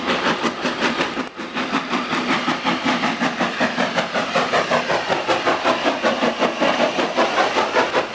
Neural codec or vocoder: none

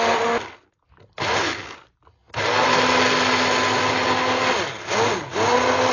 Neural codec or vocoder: none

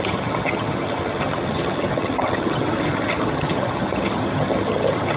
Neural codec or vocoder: vocoder, HiFi-GAN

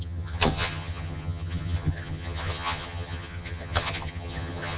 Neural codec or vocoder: vocoder, HiFi-GAN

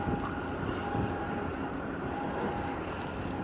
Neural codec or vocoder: none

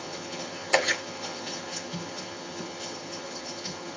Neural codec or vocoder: vocoder, HiFi-GAN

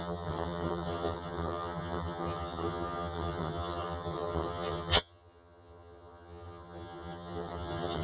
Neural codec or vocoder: vocoder, HiFi-GAN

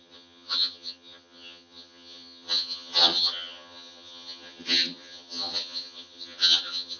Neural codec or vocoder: vocoder, HiFi-GAN